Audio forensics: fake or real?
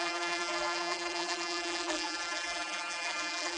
fake